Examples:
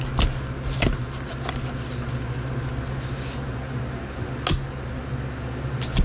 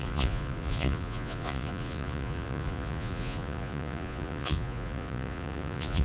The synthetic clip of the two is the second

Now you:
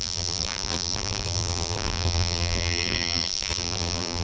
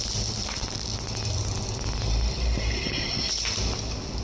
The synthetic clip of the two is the first